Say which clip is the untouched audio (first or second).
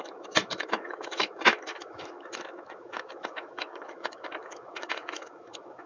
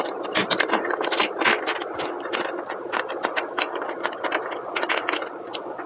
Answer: second